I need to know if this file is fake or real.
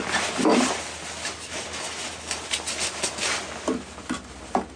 real